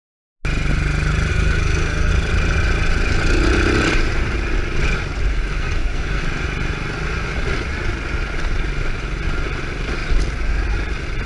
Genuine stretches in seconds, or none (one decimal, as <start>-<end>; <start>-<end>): 0.0-1.3; 2.1-5.3; 6.2-11.3